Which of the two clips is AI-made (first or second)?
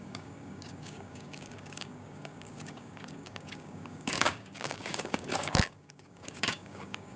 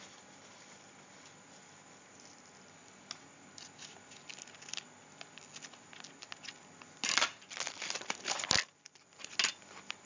first